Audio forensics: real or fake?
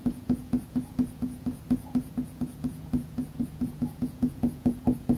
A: fake